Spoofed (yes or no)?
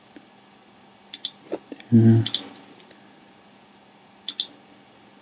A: no